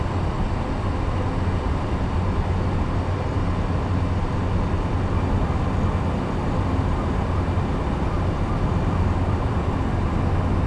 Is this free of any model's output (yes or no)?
yes